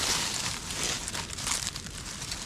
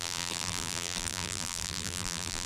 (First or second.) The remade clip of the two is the second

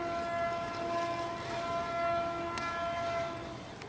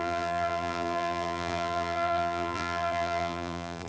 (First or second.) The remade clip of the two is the second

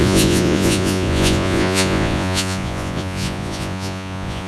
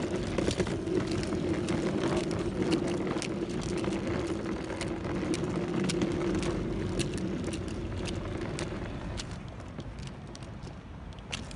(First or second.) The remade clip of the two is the first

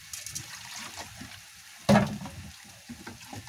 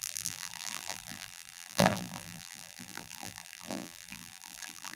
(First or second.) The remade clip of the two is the second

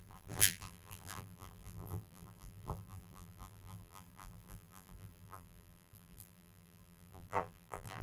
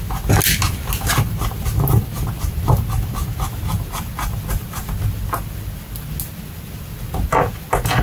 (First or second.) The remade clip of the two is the first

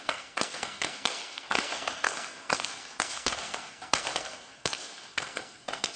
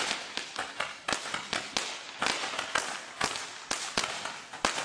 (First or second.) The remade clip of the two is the first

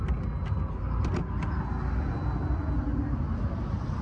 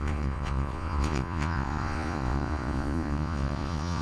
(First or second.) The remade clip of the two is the second